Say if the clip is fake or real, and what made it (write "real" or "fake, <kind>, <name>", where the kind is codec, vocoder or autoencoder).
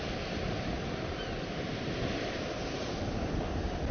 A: real